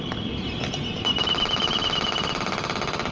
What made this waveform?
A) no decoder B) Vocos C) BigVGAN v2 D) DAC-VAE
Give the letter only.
C